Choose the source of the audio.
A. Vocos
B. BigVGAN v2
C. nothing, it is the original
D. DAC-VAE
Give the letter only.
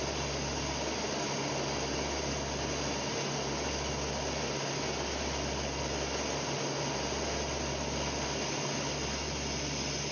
C